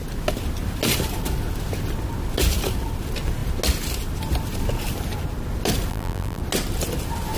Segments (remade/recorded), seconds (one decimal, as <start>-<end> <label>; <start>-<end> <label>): 0.0-5.9 recorded; 5.9-6.4 remade; 6.4-7.4 recorded